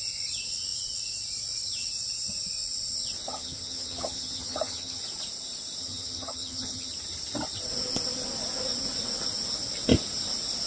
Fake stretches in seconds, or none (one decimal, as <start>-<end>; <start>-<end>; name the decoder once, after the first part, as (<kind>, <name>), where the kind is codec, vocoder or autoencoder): 3.3-5.0 (vocoder, HiFi-GAN); 5.8-6.9